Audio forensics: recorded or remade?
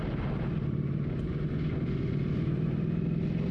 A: recorded